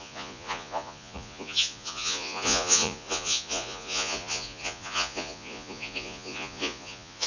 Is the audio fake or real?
fake